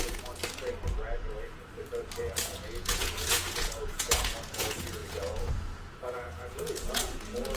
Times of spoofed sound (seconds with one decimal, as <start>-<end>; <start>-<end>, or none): 0.0-0.4; 2.2-7.6